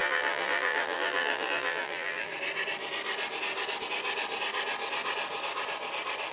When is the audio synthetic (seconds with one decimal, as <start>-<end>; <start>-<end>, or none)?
0.0-2.3